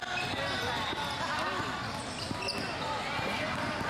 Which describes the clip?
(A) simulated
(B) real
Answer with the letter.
B